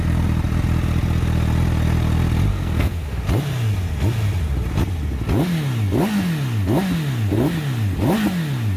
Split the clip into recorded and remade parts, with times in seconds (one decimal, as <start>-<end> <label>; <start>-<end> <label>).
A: 0.0-2.5 recorded; 2.5-3.2 remade; 3.2-8.8 recorded

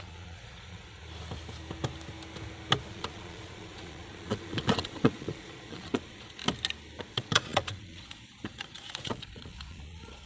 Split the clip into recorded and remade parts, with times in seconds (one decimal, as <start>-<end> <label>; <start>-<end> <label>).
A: 0.0-1.0 remade; 1.0-2.9 recorded; 2.9-6.4 remade; 6.4-7.0 recorded; 7.0-10.3 remade

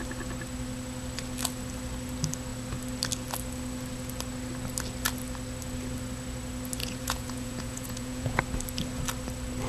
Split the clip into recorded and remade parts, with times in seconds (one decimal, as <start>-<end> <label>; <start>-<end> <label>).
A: 0.0-6.8 recorded; 6.8-8.4 remade; 8.4-9.7 recorded